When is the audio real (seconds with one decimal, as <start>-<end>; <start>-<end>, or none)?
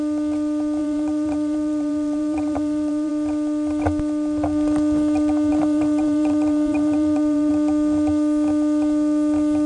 0.0-0.8; 3.1-5.5; 7.5-9.7